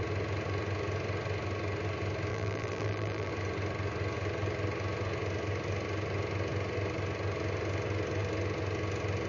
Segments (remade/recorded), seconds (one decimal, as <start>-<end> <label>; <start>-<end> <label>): 0.0-2.3 recorded; 2.3-3.3 remade; 3.3-9.3 recorded